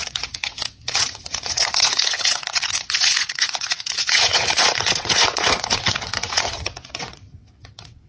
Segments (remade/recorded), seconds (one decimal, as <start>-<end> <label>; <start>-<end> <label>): 0.0-8.1 remade